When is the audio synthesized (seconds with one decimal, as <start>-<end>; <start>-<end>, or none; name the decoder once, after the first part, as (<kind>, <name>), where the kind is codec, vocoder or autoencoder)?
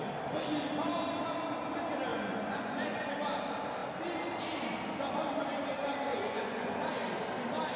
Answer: 2.1-3.1 (vocoder, Vocos); 6.1-6.8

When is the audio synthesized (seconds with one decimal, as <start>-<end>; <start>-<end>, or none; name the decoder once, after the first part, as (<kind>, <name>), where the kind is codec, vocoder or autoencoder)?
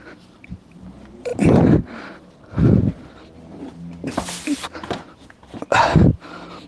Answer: none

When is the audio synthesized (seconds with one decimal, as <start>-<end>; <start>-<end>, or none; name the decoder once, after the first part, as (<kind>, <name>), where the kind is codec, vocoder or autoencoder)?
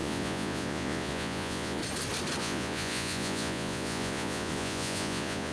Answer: 0.0-1.8 (vocoder, Vocos); 2.4-5.5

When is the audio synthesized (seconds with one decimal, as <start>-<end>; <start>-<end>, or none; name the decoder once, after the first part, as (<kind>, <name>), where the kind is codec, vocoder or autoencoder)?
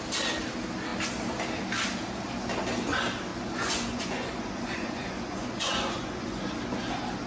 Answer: 3.3-6.4 (vocoder, Vocos)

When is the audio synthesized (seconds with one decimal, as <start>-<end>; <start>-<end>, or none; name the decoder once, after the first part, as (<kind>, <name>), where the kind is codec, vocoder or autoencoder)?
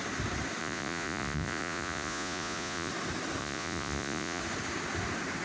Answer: 0.6-2.9 (vocoder, Vocos); 3.4-4.4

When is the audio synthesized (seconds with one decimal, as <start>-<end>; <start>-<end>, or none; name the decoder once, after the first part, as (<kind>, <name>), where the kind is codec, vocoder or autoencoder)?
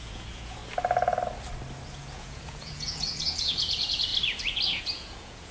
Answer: 0.0-0.6 (vocoder, Vocos); 1.9-4.1; 4.8-5.5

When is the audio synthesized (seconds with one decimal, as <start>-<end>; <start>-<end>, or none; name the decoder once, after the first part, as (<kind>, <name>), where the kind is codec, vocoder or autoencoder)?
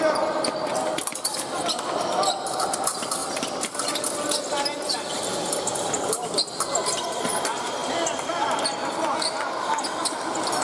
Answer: none